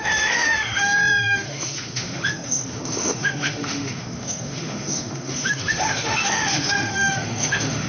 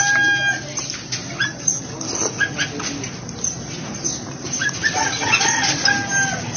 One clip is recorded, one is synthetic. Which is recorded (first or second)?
second